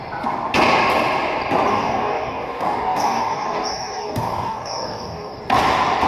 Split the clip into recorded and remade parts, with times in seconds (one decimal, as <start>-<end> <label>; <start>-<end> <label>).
0.0-1.7 recorded; 1.7-5.4 remade; 5.4-6.1 recorded